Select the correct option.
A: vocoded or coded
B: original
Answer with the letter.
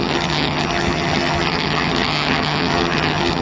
A